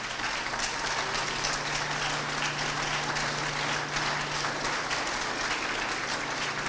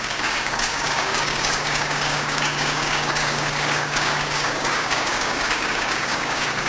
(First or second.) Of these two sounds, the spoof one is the second